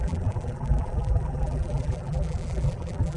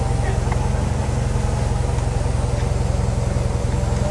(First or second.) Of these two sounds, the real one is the second